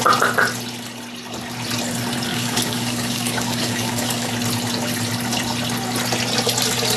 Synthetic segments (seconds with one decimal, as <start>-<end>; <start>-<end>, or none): 2.3-4.3